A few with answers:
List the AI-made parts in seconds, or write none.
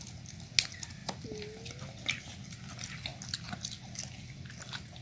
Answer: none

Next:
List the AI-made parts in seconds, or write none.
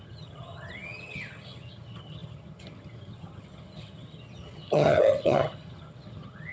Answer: 0.0-6.5 (vocoder, HiFi-GAN)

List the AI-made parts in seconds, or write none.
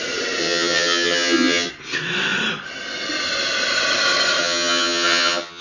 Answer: 0.4-1.7 (vocoder, HiFi-GAN); 4.4-5.6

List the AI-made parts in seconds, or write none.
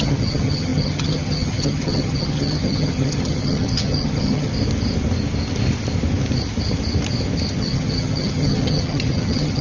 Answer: 0.0-4.5 (vocoder, HiFi-GAN); 7.6-9.6